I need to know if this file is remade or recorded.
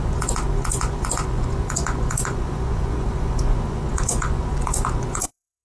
remade